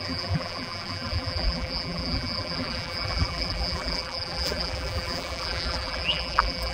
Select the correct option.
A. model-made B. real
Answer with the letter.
A